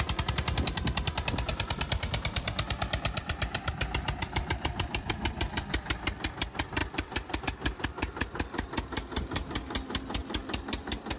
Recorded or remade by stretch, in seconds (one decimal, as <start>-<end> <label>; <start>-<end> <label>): 0.0-1.5 recorded; 1.5-5.8 remade; 5.8-6.8 recorded; 6.8-7.4 remade; 7.4-10.2 recorded; 10.2-11.2 remade